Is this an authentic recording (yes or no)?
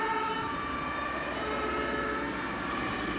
yes